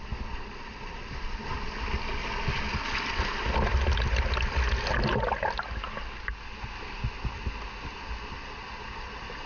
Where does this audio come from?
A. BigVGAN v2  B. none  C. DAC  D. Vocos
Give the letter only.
B